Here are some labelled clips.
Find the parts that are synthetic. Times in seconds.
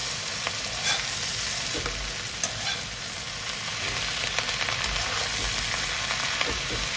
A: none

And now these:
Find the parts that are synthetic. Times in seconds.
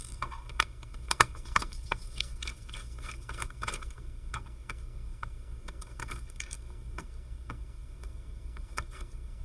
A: 0.0-9.4 (codec, SNAC)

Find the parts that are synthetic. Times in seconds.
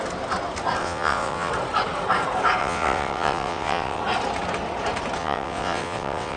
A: 0.8-1.5 (vocoder, WaveNeXt); 2.6-4.0; 5.2-6.4